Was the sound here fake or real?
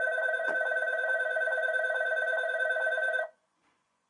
fake